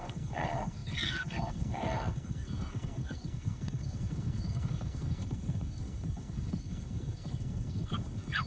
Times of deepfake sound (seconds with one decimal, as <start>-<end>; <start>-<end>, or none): 0.0-8.5